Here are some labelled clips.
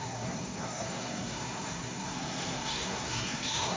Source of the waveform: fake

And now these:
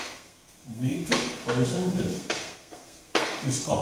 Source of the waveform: fake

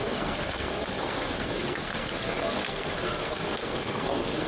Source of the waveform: fake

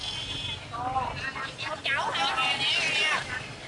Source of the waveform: real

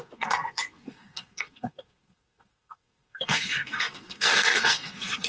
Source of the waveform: fake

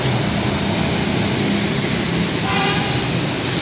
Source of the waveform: real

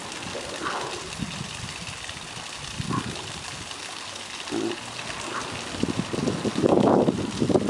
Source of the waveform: real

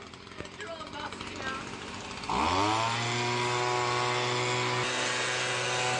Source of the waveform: real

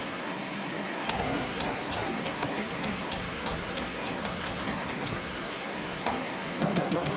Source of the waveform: fake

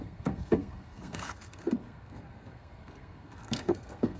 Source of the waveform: fake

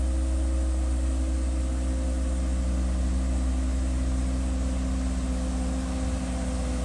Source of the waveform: real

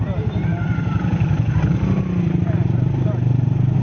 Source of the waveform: real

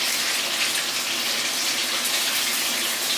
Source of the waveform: real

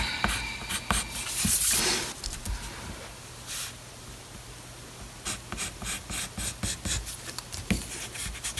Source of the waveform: real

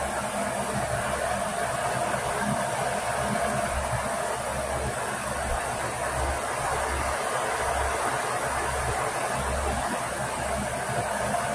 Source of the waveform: real